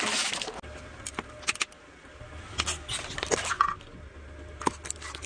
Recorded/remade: recorded